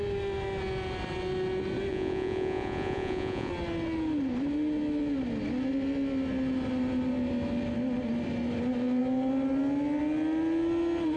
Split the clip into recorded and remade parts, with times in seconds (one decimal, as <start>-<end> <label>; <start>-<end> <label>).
0.0-1.9 recorded; 1.9-3.5 remade; 3.5-11.2 recorded